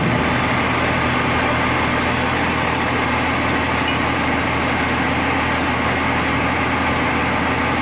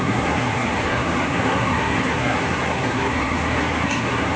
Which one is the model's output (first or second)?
second